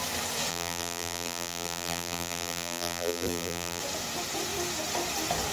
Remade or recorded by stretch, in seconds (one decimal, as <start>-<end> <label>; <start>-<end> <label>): 0.0-0.5 recorded; 0.5-3.8 remade; 3.8-5.5 recorded